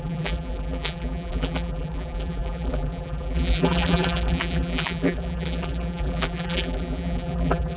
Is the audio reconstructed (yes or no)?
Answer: yes